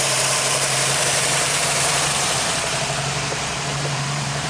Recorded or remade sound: remade